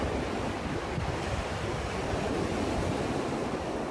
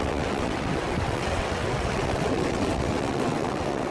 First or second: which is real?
first